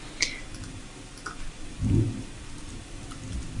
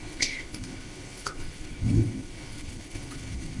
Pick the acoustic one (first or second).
first